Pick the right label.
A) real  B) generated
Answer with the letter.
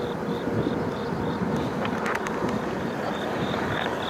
B